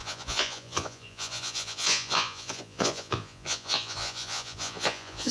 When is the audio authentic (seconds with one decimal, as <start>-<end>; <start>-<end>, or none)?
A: none